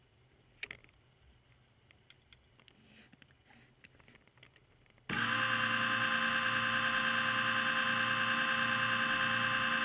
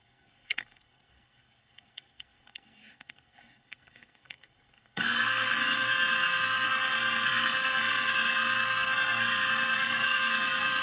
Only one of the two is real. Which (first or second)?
first